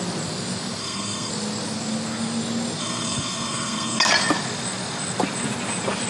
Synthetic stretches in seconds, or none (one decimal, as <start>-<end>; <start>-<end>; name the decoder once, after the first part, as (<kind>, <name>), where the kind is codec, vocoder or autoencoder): 0.8-1.3 (codec, SNAC); 2.8-4.0

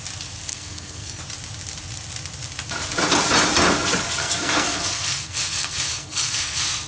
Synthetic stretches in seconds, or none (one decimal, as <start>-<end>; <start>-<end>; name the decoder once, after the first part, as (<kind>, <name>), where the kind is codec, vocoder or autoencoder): 0.5-1.2 (codec, SNAC); 4.2-6.9

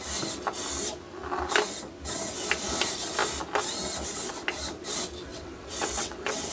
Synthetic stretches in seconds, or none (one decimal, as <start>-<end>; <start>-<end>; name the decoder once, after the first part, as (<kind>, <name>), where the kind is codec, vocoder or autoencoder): 5.3-6.5 (vocoder, WaveNeXt)

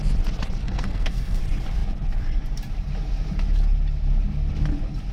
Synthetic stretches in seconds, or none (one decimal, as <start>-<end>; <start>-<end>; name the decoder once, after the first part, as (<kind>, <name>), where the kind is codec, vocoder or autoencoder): 0.6-1.4 (codec, SNAC)